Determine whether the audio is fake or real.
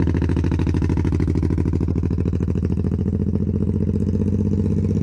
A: real